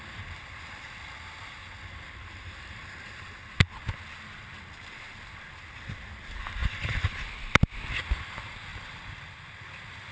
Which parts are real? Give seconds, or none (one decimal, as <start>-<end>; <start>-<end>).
0.0-6.6; 7.3-8.7; 9.3-10.1